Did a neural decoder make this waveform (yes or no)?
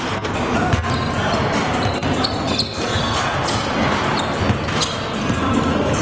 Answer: no